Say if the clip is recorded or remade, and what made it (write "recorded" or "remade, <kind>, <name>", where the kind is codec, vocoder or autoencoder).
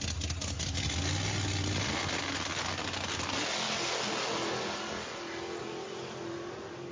recorded